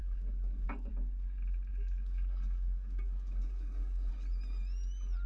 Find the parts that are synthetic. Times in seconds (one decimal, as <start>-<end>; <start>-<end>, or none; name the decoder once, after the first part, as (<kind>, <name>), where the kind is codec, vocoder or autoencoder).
0.0-0.9 (codec, DAC); 1.7-4.1